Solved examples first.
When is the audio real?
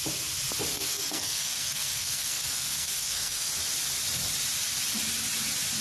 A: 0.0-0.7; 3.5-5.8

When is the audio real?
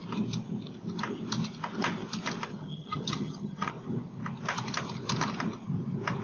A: 0.0-2.5; 3.7-6.2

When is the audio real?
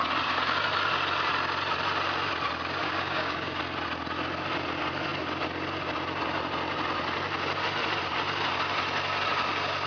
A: 0.0-2.8; 3.6-9.9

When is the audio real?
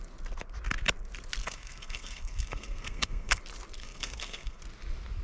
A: 0.0-1.4; 3.4-3.8; 4.6-5.2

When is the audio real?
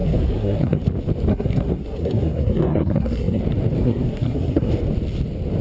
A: 0.8-1.3; 3.4-3.8; 4.7-5.6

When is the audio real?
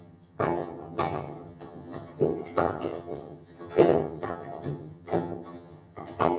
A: none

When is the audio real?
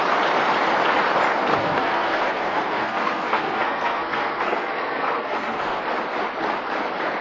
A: 0.0-1.5; 5.8-7.2